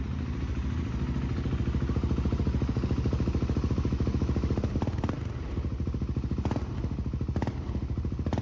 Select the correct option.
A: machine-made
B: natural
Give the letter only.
B